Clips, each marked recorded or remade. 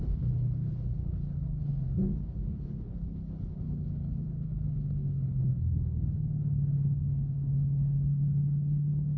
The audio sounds remade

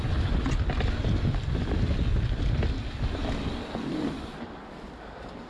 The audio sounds recorded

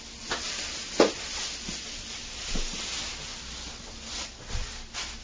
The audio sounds recorded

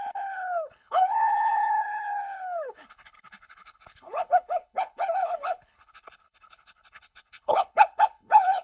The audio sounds remade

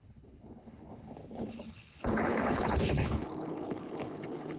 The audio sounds remade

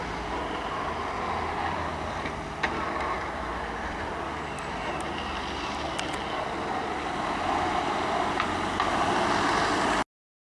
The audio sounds recorded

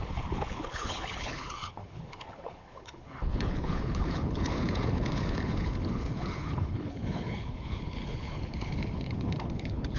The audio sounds remade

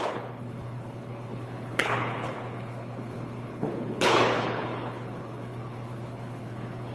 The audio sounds remade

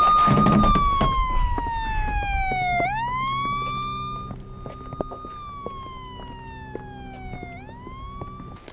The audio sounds recorded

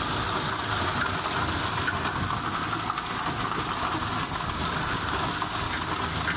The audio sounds recorded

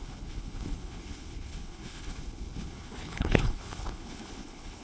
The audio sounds remade